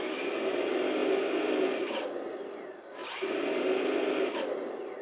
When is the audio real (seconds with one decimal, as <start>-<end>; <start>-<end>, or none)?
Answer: 0.0-1.0; 1.9-5.0